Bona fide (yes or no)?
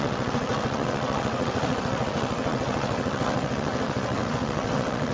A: no